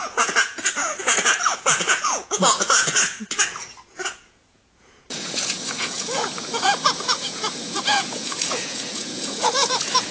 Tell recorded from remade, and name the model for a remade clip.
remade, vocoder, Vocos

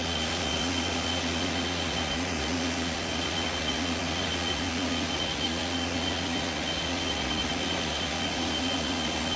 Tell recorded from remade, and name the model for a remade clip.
remade, vocoder, Vocos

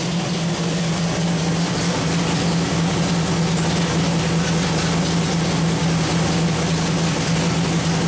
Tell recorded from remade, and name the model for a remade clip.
recorded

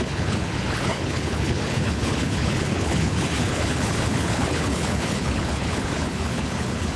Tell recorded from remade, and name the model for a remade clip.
remade, codec, HILCodec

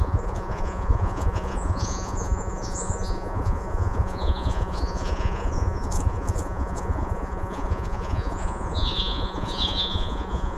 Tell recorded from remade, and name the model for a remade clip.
remade, vocoder, Vocos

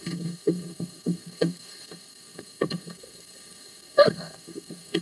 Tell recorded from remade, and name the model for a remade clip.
remade, codec, SNAC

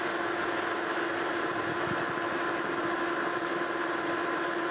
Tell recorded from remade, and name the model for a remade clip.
recorded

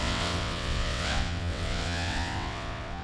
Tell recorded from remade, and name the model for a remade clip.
remade, vocoder, WaveNeXt